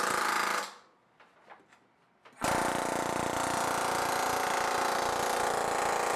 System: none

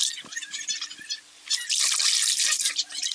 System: none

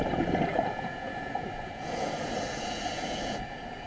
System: vocoder, Vocos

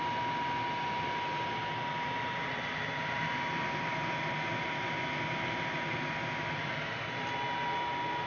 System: none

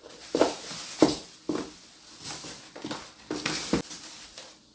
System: none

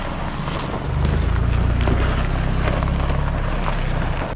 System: none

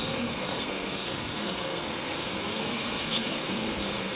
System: codec, SNAC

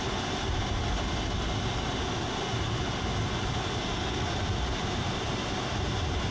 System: none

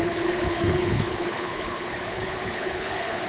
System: codec, HILCodec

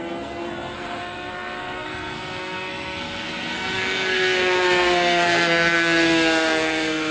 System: codec, SNAC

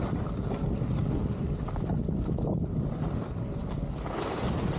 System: none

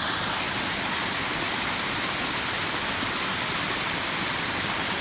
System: none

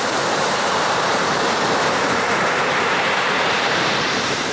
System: vocoder, BigVGAN v2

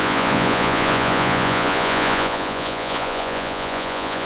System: vocoder, Vocos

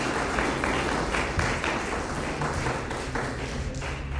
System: none